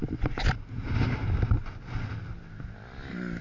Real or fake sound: real